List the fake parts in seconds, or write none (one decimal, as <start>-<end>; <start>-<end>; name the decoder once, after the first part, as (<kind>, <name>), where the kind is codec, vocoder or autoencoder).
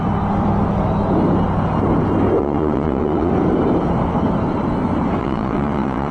2.4-3.3 (vocoder, Vocos); 5.2-6.1